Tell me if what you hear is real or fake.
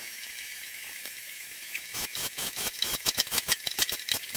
fake